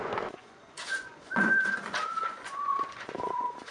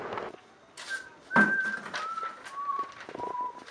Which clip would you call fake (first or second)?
first